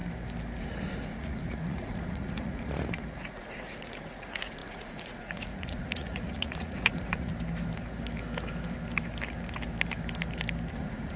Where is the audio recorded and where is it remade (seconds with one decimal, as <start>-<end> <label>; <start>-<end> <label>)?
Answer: 0.0-0.6 recorded; 0.6-7.3 remade; 7.3-10.7 recorded; 10.7-11.2 remade